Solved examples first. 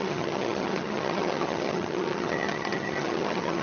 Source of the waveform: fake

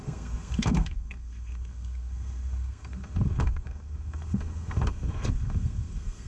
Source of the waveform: fake